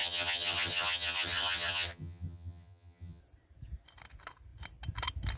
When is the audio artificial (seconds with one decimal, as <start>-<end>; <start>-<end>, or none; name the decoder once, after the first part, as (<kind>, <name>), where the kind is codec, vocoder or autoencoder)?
0.0-3.2 (vocoder, HiFi-GAN)